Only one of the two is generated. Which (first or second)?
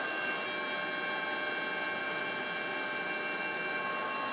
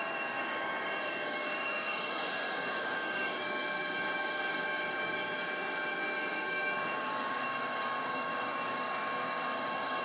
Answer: second